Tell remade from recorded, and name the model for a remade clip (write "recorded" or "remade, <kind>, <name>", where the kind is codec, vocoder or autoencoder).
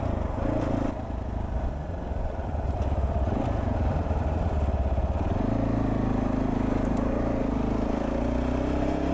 recorded